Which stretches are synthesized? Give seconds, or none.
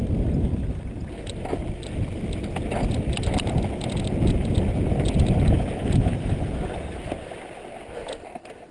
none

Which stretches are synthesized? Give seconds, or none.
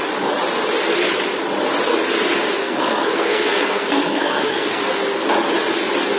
2.6-4.8 (codec, SNAC)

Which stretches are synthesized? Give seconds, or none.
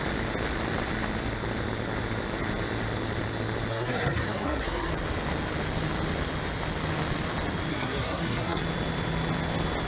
3.7-4.9 (codec, SNAC); 7.7-8.6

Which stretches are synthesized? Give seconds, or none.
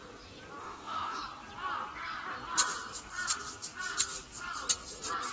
0.6-1.2 (autoencoder, DAC-VAE)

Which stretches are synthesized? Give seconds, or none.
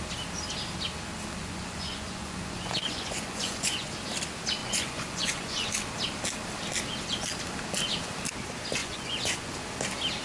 1.4-3.9 (vocoder, Vocos); 4.6-5.7; 8.8-9.5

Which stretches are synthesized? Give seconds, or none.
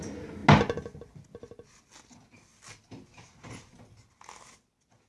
none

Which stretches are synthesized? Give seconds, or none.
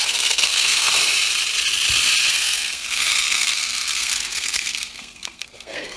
0.0-0.9 (codec, SNAC); 2.3-6.0